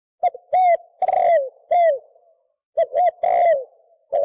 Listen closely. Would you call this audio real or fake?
real